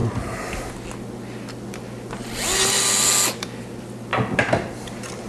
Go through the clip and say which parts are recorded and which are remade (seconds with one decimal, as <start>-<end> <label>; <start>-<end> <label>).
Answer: 0.0-5.3 recorded